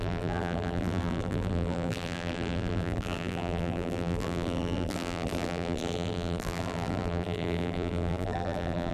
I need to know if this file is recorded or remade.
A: remade